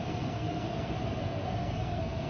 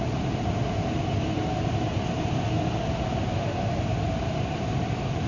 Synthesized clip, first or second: first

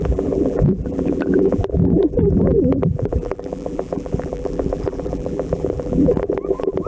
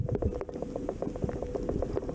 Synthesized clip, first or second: first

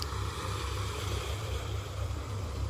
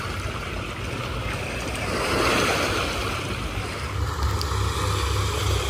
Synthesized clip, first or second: first